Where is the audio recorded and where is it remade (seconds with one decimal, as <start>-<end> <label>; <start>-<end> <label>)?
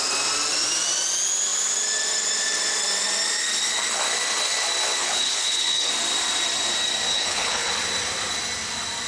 0.0-5.0 recorded; 5.0-5.9 remade; 5.9-7.1 recorded; 7.1-7.7 remade; 7.7-9.1 recorded